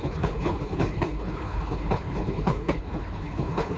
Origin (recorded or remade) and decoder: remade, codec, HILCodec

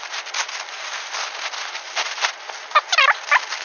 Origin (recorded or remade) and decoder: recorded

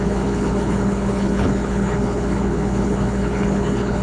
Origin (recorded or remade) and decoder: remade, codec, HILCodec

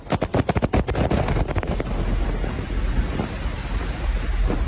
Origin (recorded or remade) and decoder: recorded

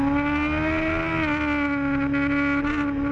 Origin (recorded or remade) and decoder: recorded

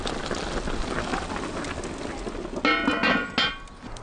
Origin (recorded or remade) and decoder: recorded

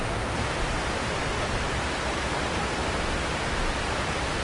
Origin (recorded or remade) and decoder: recorded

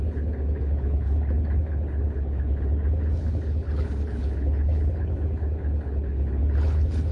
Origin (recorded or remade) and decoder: remade, codec, HILCodec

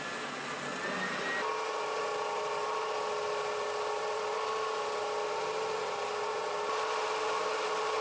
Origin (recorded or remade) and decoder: recorded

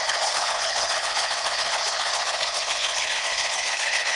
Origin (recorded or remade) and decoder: remade, codec, HILCodec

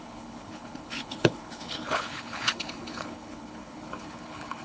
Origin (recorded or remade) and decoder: remade, codec, HILCodec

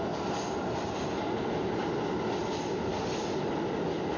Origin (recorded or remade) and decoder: recorded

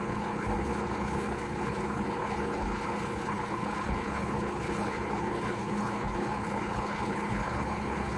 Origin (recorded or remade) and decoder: remade, codec, HILCodec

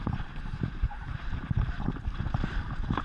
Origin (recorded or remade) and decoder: recorded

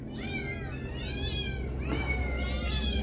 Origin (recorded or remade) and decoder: recorded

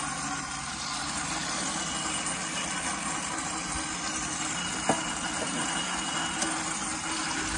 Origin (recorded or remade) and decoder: recorded